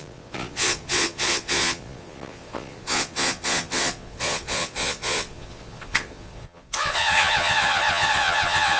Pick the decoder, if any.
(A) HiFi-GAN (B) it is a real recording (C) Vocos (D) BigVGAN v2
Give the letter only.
C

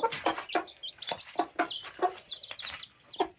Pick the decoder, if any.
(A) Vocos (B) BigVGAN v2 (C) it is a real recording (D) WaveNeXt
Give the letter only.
C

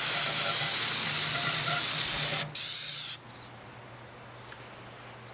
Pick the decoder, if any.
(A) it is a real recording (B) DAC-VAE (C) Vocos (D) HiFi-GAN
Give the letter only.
A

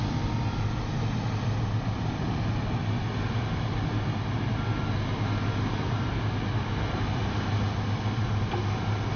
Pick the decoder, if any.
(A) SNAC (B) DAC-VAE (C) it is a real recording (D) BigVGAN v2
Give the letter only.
C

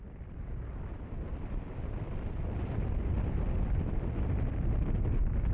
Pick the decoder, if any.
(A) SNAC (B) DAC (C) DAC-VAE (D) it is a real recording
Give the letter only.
D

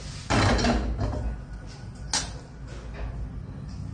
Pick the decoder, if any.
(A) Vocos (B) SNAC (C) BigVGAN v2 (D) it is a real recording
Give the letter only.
D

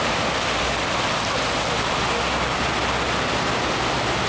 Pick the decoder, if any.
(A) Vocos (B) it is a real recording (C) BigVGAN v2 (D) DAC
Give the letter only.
B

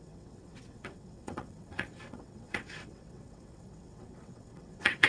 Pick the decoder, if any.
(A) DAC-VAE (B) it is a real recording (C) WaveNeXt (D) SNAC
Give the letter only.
C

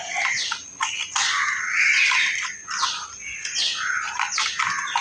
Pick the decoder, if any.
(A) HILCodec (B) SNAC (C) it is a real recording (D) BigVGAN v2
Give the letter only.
C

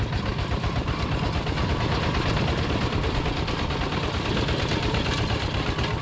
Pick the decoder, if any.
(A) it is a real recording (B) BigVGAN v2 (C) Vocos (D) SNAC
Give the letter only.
A